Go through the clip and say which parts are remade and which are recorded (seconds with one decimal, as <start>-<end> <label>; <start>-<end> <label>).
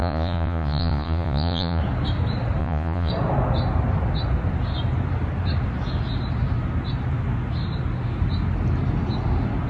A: 0.0-1.8 remade; 1.8-2.6 recorded; 2.6-3.1 remade; 3.1-9.7 recorded